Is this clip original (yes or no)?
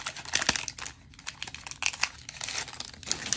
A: yes